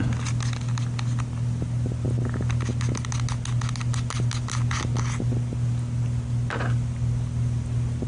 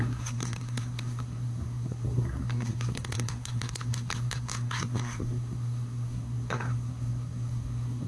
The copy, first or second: second